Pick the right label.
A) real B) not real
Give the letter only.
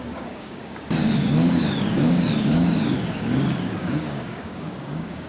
B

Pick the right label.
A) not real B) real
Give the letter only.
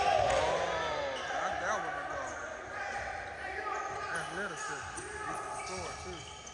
B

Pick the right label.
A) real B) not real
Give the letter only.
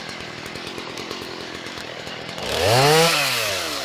B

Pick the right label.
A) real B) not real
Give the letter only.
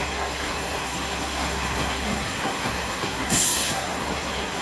B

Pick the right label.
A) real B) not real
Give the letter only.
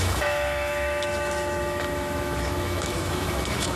B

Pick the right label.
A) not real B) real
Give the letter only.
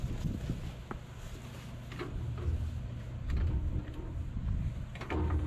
B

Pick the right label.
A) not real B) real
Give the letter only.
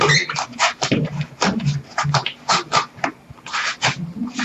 B